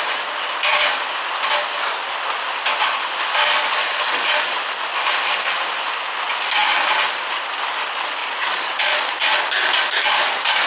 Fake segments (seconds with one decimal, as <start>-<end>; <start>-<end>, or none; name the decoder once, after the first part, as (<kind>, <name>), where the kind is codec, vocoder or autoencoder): 8.2-9.0 (vocoder, Vocos)

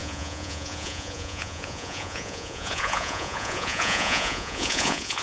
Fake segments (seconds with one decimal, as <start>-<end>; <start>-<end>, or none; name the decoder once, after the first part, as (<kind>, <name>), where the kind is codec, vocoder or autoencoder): 0.0-5.2 (vocoder, Vocos)

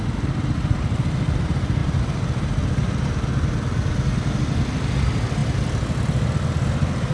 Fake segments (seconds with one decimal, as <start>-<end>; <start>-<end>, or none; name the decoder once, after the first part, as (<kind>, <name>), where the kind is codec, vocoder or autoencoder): none

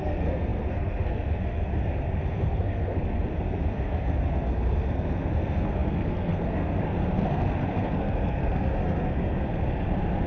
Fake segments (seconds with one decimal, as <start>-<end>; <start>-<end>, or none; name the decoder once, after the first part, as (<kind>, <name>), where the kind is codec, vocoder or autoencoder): 0.0-10.3 (codec, SNAC)

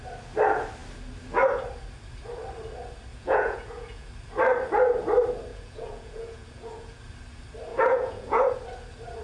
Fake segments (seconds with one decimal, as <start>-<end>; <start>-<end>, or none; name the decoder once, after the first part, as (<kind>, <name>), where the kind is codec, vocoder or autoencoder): 3.1-4.1 (vocoder, Vocos); 5.5-7.0; 7.7-8.5

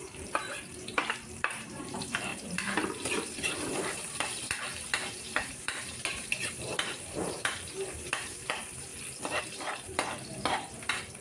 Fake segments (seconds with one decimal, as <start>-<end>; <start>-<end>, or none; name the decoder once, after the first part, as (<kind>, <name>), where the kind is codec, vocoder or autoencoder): 0.0-8.9 (vocoder, BigVGAN v2); 9.4-11.2

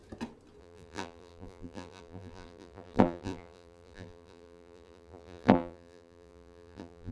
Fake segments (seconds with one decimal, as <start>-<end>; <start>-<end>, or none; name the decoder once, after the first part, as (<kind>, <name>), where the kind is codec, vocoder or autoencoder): 0.6-7.1 (vocoder, BigVGAN v2)

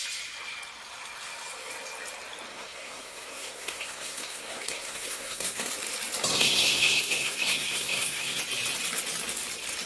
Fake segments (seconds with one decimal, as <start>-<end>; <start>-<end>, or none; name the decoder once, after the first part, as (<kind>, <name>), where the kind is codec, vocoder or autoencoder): 2.5-5.7 (codec, SNAC); 6.3-8.4